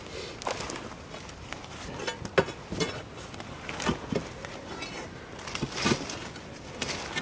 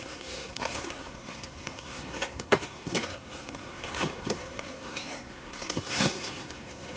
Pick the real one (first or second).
first